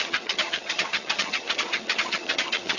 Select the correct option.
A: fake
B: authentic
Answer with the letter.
A